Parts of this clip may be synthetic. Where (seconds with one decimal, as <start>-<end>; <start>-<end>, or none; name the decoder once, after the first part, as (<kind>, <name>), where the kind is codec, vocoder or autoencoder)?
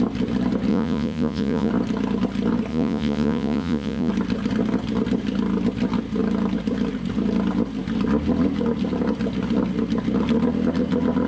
0.7-1.7 (vocoder, Vocos); 2.7-4.1